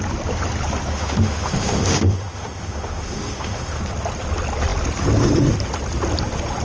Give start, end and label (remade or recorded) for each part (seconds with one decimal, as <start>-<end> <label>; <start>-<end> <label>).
0.0-0.9 recorded; 0.9-3.8 remade; 3.8-6.6 recorded